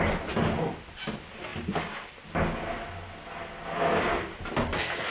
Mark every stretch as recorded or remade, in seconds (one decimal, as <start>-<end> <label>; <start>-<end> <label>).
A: 0.0-5.1 recorded